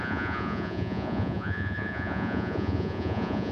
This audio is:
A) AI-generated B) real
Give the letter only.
A